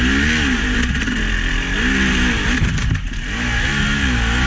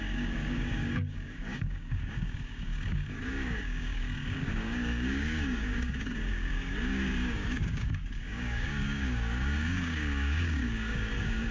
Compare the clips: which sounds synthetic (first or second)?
second